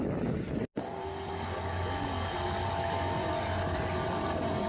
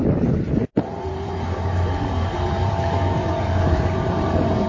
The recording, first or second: first